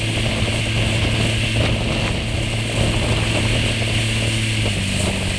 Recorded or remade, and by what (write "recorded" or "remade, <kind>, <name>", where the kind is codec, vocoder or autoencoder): recorded